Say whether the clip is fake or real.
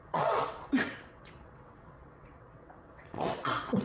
fake